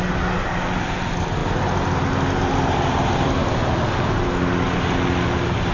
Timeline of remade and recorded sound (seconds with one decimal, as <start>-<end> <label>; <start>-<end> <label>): 0.0-5.7 recorded